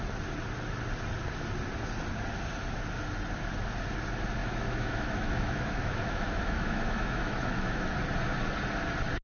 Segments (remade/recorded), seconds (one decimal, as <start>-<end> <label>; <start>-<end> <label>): 0.0-4.4 recorded; 4.4-7.9 remade; 7.9-9.2 recorded

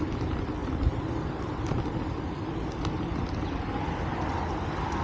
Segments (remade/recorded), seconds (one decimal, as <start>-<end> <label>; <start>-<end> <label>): 0.0-5.0 recorded

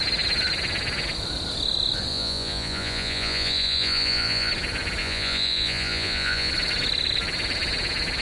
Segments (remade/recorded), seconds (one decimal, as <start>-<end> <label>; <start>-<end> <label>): 0.0-2.1 recorded; 2.1-4.5 remade; 4.5-5.0 recorded; 5.0-6.5 remade; 6.5-8.2 recorded

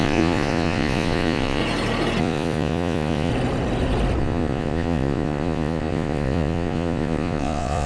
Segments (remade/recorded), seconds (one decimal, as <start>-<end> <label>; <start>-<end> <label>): 0.0-1.6 remade; 1.6-2.2 recorded; 2.2-3.3 remade; 3.3-4.2 recorded; 4.2-7.9 remade

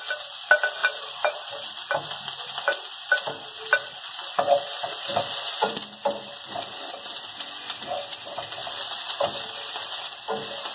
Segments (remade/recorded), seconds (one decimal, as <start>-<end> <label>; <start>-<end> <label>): 0.0-5.1 recorded; 5.1-6.9 remade; 6.9-8.6 recorded; 8.6-9.5 remade; 9.5-10.7 recorded

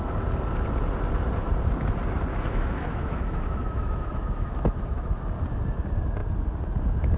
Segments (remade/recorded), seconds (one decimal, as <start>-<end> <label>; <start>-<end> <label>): 0.0-2.3 recorded; 2.3-5.1 remade; 5.1-7.2 recorded